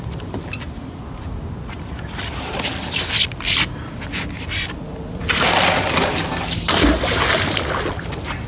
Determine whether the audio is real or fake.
real